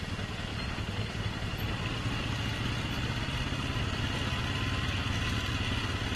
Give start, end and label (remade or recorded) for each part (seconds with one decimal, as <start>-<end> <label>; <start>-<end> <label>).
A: 0.0-6.2 recorded